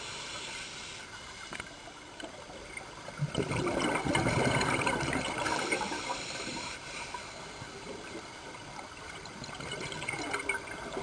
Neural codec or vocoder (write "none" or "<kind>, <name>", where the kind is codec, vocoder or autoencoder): vocoder, BigVGAN v2